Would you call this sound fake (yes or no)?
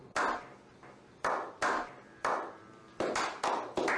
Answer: no